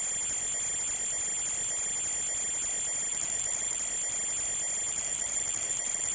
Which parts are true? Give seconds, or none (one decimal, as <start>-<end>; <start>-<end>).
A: 0.0-3.1; 3.8-4.9